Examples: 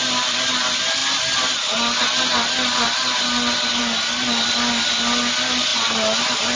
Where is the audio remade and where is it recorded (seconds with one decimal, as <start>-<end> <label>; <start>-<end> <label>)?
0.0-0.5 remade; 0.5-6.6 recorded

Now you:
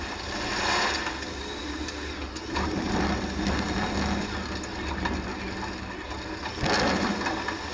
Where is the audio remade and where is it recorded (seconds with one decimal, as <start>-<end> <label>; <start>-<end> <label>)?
0.0-2.2 recorded; 2.2-2.9 remade; 2.9-7.7 recorded

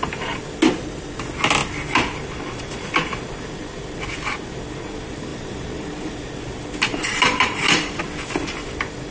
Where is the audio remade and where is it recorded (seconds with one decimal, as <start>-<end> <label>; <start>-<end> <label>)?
0.0-5.3 recorded; 5.3-6.3 remade; 6.3-6.9 recorded; 6.9-8.0 remade; 8.0-9.1 recorded

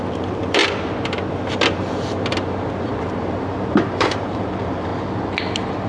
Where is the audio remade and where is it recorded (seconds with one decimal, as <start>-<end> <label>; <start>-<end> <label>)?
0.0-0.6 remade; 0.6-1.3 recorded; 1.3-2.3 remade; 2.3-3.0 recorded; 3.0-4.9 remade; 4.9-5.9 recorded

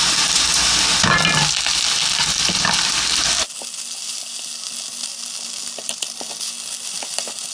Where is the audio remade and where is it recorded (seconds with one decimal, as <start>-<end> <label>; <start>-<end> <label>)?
0.0-7.5 recorded